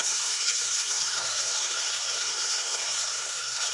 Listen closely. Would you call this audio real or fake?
fake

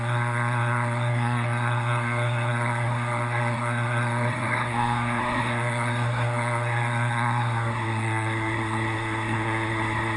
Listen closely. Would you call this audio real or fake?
fake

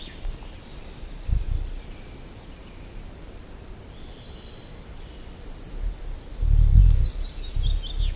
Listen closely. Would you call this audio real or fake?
real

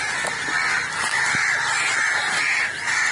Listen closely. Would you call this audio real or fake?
real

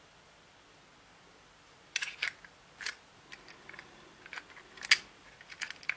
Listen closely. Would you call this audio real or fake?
real